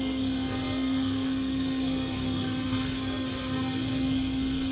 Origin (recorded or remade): remade